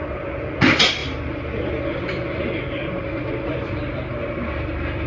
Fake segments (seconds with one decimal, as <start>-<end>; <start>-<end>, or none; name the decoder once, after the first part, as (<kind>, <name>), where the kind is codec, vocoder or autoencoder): 1.0-4.1 (vocoder, BigVGAN v2)